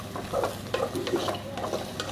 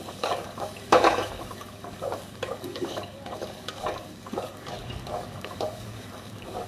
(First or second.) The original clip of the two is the first